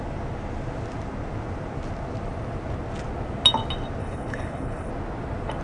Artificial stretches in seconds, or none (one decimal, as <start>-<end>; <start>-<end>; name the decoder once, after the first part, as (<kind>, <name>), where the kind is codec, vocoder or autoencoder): 4.0-4.9 (codec, HILCodec)